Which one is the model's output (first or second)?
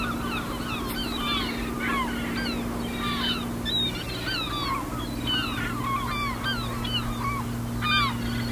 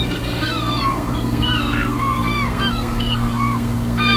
second